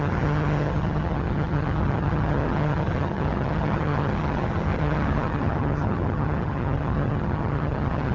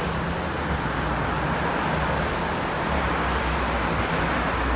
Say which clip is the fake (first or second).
first